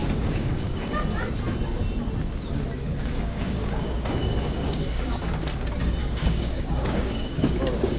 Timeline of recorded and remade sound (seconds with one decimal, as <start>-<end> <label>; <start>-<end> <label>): 0.0-0.8 remade; 0.8-2.8 recorded; 2.8-5.2 remade; 5.2-6.0 recorded; 6.0-7.6 remade; 7.6-8.0 recorded